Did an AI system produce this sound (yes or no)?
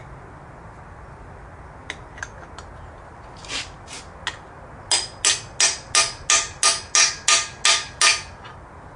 no